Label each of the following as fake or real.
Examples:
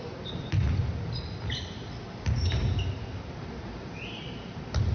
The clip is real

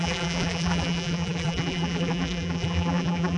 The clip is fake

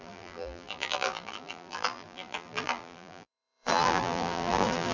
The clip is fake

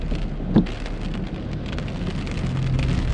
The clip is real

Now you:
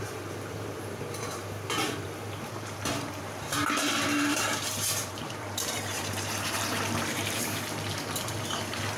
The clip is fake